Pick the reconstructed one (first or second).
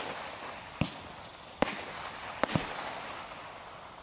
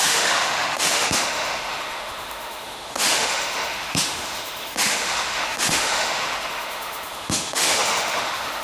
second